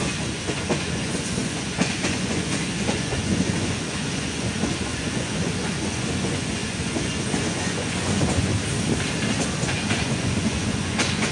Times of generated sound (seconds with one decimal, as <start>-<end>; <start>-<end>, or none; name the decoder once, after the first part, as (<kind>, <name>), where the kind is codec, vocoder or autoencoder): 0.0-8.5 (vocoder, Vocos); 9.6-11.3

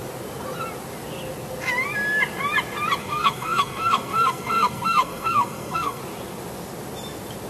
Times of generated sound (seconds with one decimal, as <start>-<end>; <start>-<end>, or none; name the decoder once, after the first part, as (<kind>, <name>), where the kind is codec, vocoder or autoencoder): 3.0-6.0 (codec, SNAC)

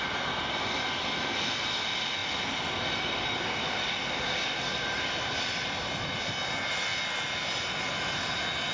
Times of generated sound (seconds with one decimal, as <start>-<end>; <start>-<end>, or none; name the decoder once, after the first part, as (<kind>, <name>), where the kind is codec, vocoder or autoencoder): 2.2-6.2 (vocoder, BigVGAN v2)

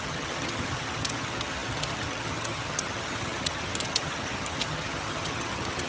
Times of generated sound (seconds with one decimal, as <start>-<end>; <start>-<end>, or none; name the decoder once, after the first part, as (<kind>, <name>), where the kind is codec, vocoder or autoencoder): 0.0-5.9 (vocoder, HiFi-GAN)